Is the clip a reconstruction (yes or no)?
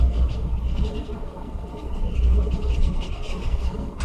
yes